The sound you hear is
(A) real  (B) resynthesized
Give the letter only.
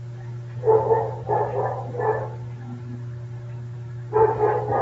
A